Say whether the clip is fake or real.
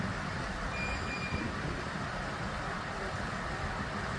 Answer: fake